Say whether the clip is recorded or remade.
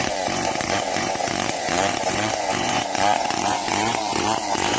remade